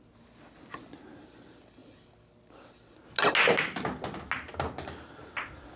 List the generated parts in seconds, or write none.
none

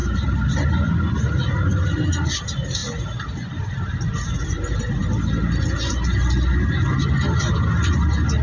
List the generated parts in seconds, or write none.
none

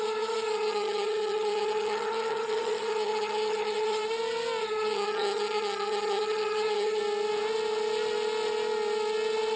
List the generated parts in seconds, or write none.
0.0-4.0 (vocoder, HiFi-GAN); 4.6-7.0

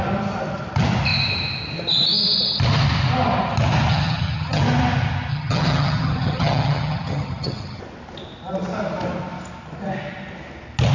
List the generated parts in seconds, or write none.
3.9-4.6 (vocoder, HiFi-GAN); 5.3-7.8